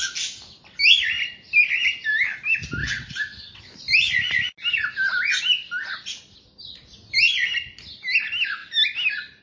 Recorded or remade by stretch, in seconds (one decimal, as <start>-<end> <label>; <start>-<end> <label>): 0.0-2.8 recorded; 2.8-3.6 remade; 3.6-9.4 recorded